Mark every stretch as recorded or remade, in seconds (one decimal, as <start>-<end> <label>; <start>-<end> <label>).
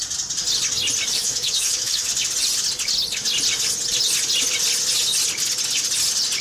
0.0-1.1 recorded; 1.1-2.1 remade; 2.1-6.4 recorded